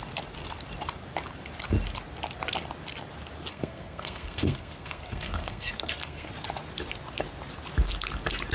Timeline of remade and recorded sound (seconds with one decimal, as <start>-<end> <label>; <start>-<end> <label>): 0.0-3.5 recorded; 3.5-6.3 remade; 6.3-8.5 recorded